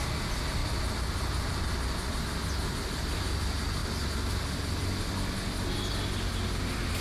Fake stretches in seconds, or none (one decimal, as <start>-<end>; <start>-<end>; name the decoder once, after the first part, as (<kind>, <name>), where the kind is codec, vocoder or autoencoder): none